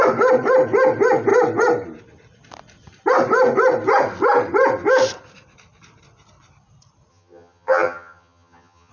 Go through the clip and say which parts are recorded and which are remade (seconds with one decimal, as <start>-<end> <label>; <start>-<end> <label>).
0.0-7.1 recorded; 7.1-8.9 remade